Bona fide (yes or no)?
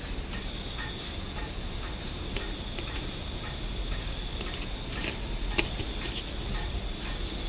yes